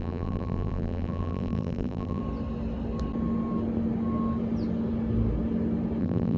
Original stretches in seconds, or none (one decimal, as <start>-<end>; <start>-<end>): 2.2-6.0